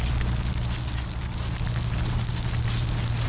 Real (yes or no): yes